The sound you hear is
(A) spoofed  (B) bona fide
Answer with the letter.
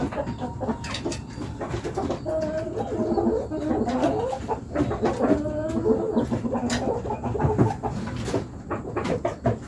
B